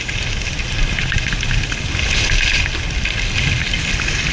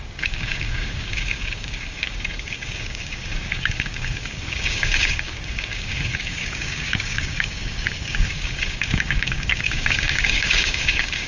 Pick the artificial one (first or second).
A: second